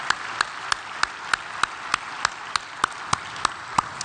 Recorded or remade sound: recorded